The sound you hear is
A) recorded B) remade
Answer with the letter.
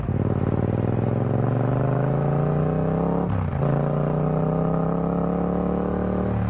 A